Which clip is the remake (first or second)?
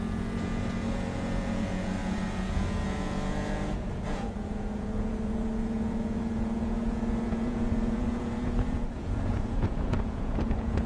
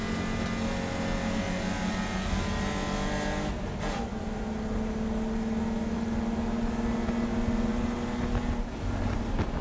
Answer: first